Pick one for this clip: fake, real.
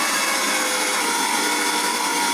real